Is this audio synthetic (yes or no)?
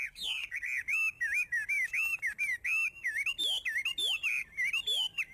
no